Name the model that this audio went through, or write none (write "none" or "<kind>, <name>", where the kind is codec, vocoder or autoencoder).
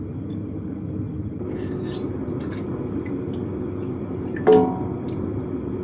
none